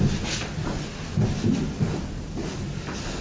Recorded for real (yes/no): yes